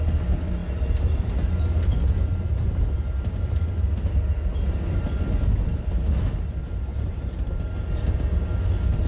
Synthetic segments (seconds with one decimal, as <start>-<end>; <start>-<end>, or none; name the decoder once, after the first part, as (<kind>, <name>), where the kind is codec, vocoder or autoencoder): 6.9-7.5 (vocoder, BigVGAN v2)